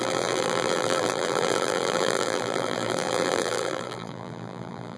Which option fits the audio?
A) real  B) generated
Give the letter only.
B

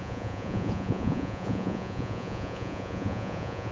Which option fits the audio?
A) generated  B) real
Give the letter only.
A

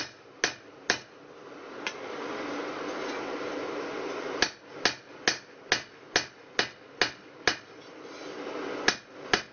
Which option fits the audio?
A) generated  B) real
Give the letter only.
B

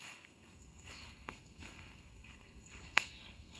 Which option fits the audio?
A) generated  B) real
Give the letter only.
A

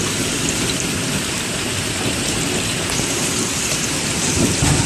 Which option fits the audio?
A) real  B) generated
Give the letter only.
B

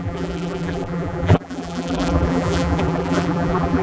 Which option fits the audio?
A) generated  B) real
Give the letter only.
A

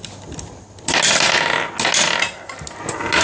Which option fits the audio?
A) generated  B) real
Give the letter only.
B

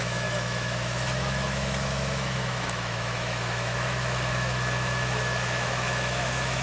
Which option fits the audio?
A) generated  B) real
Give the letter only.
A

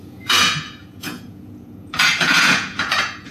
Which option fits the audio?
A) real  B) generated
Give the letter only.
B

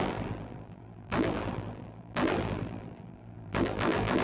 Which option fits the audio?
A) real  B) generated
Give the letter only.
B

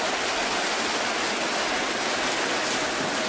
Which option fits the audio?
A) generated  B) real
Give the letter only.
B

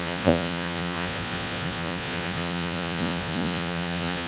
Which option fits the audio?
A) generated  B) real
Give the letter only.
A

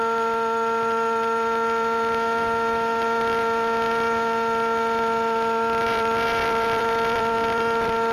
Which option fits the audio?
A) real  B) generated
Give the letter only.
B